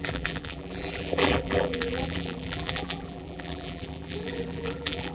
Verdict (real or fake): fake